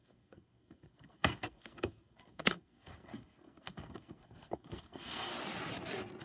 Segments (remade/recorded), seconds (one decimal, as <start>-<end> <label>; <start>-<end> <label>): 0.0-5.3 remade; 5.3-6.2 recorded